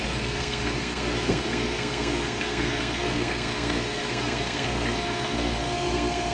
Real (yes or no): no